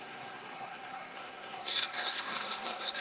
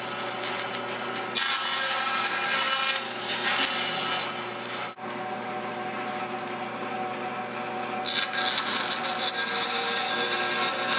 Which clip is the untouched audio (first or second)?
second